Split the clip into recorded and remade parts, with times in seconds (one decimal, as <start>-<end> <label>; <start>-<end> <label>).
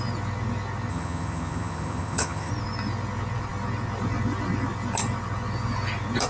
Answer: 0.0-0.9 recorded; 0.9-2.5 remade; 2.5-6.3 recorded